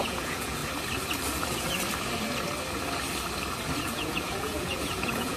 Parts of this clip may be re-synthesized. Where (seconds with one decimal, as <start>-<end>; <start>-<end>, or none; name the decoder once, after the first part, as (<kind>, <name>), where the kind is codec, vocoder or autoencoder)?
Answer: 0.0-0.6 (vocoder, Vocos); 3.8-5.4